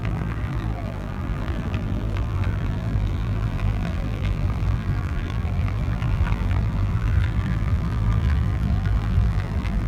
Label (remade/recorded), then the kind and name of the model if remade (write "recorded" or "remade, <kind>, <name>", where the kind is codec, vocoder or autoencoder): remade, vocoder, BigVGAN v2